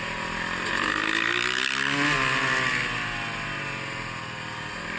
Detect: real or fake real